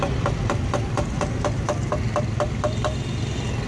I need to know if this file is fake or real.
real